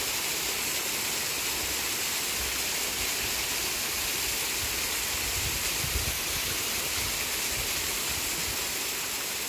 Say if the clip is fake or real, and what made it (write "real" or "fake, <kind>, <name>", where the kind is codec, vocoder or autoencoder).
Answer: real